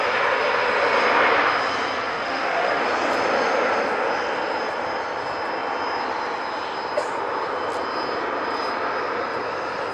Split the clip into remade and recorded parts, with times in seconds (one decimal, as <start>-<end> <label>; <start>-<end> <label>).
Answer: 0.0-2.1 recorded; 2.1-2.8 remade; 2.8-9.9 recorded